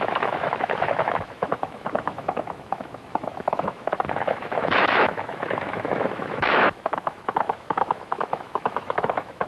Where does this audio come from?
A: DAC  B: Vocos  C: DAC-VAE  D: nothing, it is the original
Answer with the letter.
C